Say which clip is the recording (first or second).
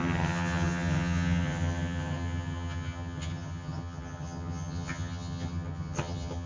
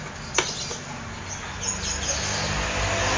second